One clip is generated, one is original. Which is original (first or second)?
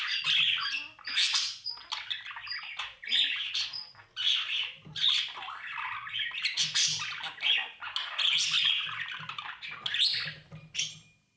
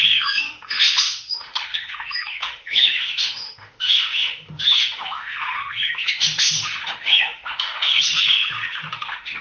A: first